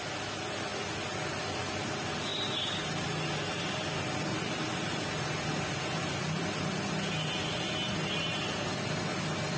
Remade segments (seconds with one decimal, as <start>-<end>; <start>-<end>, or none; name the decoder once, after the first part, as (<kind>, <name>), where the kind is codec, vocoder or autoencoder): none

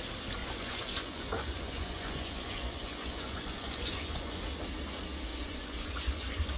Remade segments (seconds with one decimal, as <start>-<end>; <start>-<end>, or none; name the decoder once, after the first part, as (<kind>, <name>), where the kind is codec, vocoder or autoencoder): 0.4-4.4 (vocoder, Vocos); 5.3-6.6

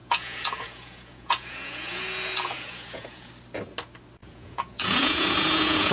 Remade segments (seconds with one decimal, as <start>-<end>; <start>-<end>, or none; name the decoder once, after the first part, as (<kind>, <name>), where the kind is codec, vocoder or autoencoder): 0.0-3.3 (vocoder, Vocos); 4.2-5.9

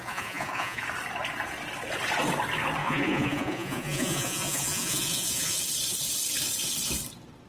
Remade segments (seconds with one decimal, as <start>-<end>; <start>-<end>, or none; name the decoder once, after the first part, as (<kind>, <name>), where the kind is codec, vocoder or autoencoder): 0.0-0.8 (vocoder, Vocos); 2.8-5.6

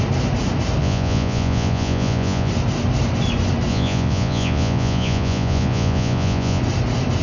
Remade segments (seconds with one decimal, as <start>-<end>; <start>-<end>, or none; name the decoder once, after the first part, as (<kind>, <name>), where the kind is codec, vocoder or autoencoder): 0.8-2.5 (vocoder, Vocos); 3.7-6.6

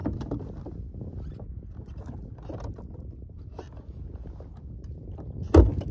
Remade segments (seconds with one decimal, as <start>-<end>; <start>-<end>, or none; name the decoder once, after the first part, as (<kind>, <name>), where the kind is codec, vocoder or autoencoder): none

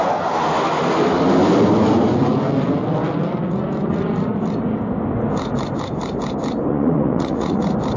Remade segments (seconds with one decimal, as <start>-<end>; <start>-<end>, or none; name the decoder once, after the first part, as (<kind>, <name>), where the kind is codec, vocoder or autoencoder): 6.7-7.6 (vocoder, Vocos)

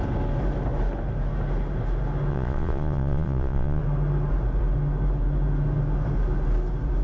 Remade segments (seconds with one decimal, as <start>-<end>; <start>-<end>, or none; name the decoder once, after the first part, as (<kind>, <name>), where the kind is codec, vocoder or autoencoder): 2.3-3.8 (vocoder, Vocos)